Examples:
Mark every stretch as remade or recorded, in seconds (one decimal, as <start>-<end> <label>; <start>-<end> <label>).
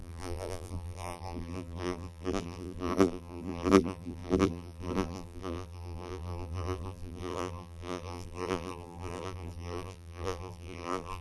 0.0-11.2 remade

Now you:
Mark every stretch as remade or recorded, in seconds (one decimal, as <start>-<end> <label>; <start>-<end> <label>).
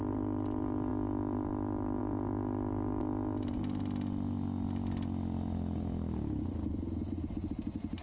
0.0-8.0 recorded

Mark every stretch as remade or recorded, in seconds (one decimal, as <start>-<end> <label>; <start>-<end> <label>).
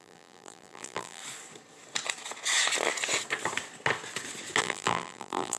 0.0-1.2 remade; 1.2-4.6 recorded; 4.6-5.6 remade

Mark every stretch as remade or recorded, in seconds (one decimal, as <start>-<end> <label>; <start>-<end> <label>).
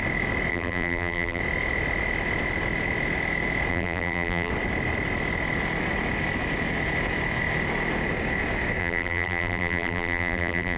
0.0-0.5 recorded; 0.5-1.4 remade; 1.4-3.7 recorded; 3.7-4.5 remade; 4.5-8.8 recorded; 8.8-10.8 remade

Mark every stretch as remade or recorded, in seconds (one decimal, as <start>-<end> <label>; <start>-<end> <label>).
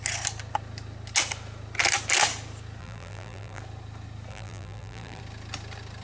0.0-2.8 recorded; 2.8-3.6 remade; 3.6-4.3 recorded; 4.3-5.2 remade; 5.2-6.0 recorded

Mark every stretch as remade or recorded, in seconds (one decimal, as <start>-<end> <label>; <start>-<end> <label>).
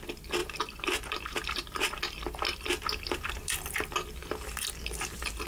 0.0-0.4 recorded; 0.4-1.9 remade; 1.9-5.5 recorded